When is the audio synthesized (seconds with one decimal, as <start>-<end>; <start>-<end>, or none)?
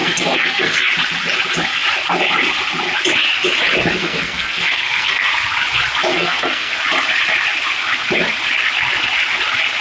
0.0-0.9; 4.0-5.3; 6.1-6.8